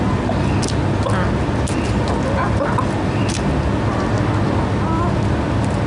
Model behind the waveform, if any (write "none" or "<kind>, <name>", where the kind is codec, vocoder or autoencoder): none